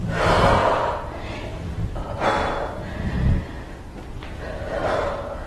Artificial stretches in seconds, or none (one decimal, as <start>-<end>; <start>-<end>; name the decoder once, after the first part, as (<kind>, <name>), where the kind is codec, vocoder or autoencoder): none

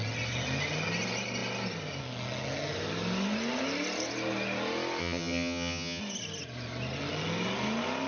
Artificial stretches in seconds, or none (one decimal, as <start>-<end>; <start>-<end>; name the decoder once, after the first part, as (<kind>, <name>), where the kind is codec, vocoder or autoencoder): 5.0-6.0 (vocoder, HiFi-GAN)

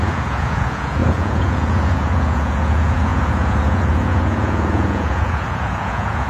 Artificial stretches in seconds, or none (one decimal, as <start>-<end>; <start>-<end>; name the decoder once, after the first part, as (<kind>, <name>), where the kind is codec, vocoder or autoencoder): 0.0-6.3 (vocoder, Vocos)

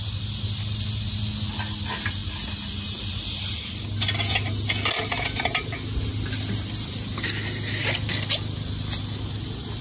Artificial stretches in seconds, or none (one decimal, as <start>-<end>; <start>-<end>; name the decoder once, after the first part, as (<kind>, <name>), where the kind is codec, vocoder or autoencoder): none

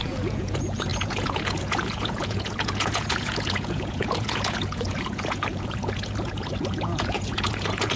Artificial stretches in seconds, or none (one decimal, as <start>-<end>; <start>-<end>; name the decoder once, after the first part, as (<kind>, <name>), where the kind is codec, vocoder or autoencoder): 0.0-8.0 (vocoder, Vocos)

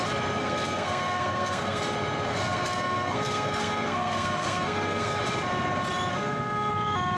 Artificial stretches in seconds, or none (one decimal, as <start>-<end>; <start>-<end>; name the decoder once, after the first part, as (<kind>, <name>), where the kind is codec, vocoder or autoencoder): 0.4-1.8 (codec, SNAC); 2.3-5.2; 6.1-6.7

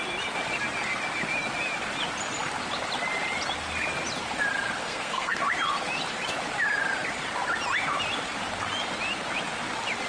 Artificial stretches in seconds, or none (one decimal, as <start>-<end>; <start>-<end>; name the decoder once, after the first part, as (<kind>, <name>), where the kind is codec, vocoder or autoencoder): 4.8-5.4 (codec, SNAC)

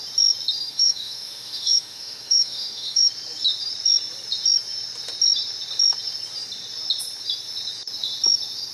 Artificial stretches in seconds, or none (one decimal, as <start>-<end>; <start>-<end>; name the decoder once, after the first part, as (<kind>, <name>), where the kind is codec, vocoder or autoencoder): 0.6-3.1 (autoencoder, DAC-VAE)